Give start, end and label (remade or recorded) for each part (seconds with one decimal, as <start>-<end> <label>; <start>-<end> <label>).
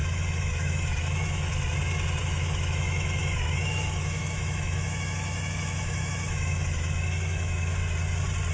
0.0-1.5 remade; 1.5-2.2 recorded; 2.2-7.8 remade; 7.8-8.5 recorded